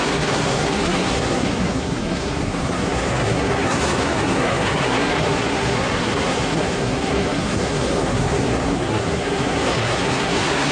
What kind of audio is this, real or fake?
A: fake